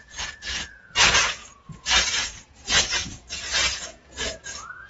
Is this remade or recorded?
remade